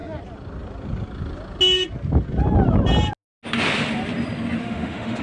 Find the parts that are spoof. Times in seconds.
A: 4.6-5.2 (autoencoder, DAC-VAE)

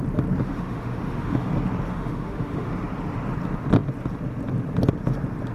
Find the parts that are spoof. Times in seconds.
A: 0.4-1.5 (autoencoder, DAC-VAE); 1.9-2.7

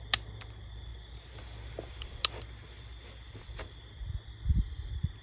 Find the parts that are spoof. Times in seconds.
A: none